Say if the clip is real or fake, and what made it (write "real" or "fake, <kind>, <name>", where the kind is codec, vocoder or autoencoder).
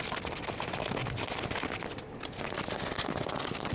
real